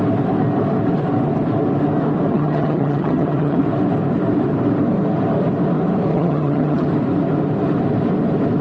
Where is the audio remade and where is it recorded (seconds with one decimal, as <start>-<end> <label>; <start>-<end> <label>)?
0.0-2.3 recorded; 2.3-3.6 remade; 3.6-6.1 recorded; 6.1-6.9 remade; 6.9-8.6 recorded